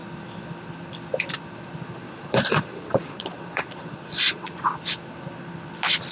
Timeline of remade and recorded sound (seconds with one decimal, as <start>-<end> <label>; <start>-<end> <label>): 0.0-2.0 recorded; 2.0-4.6 remade; 4.6-6.1 recorded